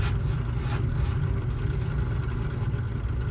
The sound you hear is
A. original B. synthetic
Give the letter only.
A